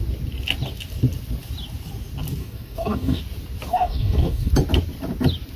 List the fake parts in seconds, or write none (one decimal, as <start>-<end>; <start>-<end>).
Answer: 2.4-3.2; 3.7-4.5